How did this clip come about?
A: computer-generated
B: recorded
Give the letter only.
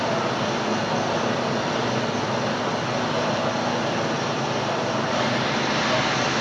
B